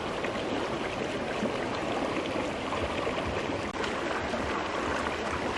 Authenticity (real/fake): real